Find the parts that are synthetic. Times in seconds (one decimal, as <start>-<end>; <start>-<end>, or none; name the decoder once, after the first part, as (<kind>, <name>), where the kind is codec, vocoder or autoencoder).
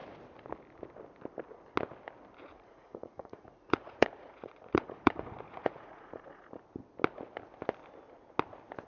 2.4-6.5 (vocoder, Vocos)